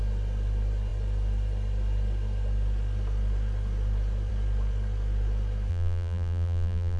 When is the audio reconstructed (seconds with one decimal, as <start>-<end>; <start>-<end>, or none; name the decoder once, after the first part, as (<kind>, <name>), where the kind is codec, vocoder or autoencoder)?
5.7-7.0 (vocoder, BigVGAN v2)